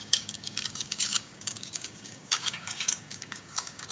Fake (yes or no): yes